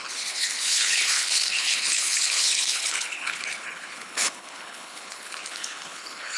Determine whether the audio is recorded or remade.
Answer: remade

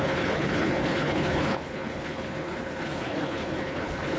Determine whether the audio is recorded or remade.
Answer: remade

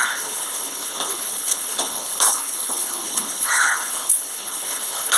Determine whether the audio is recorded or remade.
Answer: remade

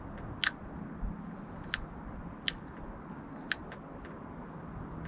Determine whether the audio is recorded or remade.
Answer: recorded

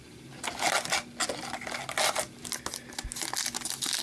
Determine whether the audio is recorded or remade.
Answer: recorded